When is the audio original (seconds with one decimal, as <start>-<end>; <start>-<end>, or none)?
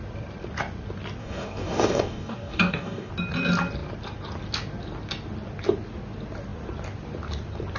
0.0-1.2; 3.1-7.8